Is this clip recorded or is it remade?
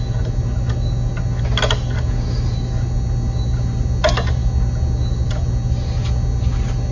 recorded